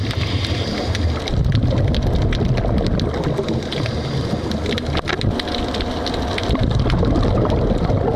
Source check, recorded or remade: recorded